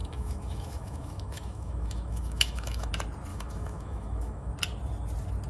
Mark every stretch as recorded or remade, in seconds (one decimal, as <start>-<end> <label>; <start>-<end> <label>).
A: 0.0-2.9 remade; 2.9-3.3 recorded; 3.3-4.5 remade; 4.5-5.5 recorded